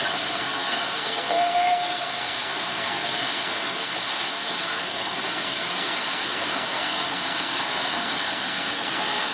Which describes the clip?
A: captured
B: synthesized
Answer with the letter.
B